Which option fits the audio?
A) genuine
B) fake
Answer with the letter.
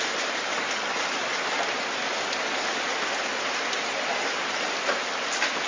A